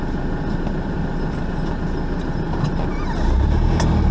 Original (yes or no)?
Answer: yes